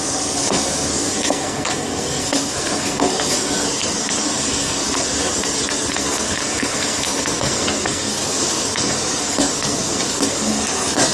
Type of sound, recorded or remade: remade